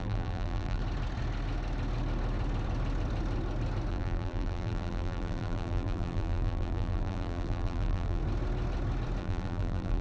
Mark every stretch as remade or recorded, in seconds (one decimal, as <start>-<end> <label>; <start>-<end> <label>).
0.0-0.8 remade; 0.8-3.9 recorded; 3.9-8.2 remade; 8.2-9.2 recorded; 9.2-10.0 remade